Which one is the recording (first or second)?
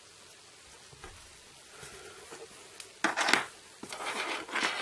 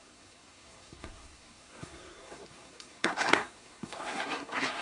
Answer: first